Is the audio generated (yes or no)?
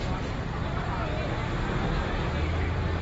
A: no